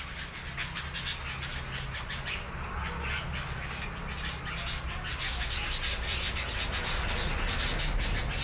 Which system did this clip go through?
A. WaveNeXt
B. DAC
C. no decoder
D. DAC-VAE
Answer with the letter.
C